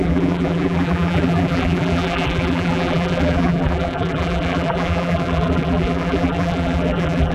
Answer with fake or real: fake